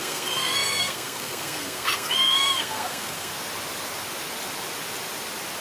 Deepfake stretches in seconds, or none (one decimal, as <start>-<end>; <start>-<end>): 0.0-3.3